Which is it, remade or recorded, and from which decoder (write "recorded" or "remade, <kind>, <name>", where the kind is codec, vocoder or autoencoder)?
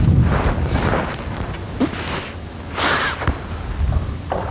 recorded